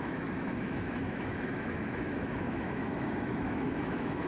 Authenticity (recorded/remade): remade